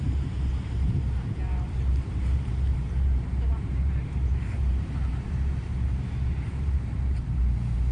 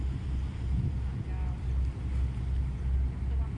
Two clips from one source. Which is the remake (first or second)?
first